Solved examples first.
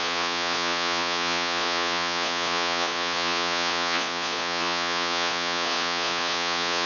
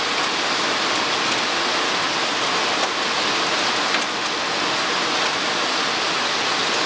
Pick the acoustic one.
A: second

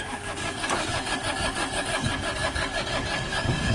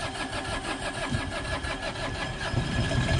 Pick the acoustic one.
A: second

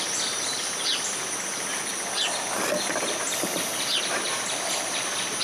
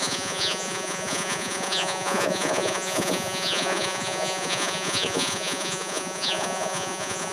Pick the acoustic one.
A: first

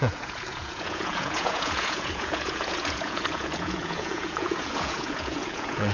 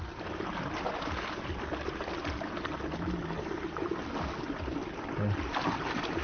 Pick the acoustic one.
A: second